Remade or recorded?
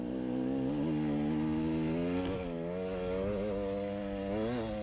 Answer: recorded